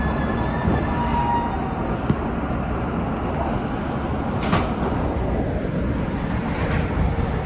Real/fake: real